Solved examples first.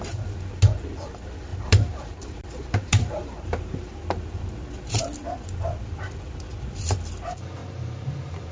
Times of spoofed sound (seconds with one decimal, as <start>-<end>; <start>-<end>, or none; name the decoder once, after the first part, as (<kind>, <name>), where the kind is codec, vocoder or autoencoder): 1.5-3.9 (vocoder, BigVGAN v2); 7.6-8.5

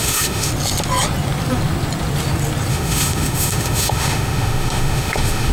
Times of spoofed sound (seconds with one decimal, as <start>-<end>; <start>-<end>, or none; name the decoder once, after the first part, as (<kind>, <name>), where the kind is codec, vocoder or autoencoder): 0.0-0.5 (autoencoder, DAC-VAE); 2.7-5.5

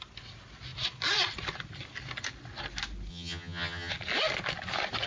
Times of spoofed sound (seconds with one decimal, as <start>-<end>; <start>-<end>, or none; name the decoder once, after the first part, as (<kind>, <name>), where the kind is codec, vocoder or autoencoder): 3.1-3.9 (vocoder, HiFi-GAN)

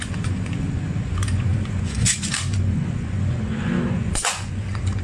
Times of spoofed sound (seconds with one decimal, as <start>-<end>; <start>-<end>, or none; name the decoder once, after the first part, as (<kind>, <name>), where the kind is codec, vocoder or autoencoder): 0.0-5.0 (vocoder, Vocos)